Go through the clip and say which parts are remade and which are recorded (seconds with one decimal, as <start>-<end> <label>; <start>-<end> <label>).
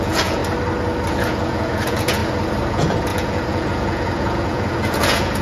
0.0-0.4 remade; 0.4-1.1 recorded; 1.1-2.2 remade; 2.2-2.7 recorded; 2.7-5.4 remade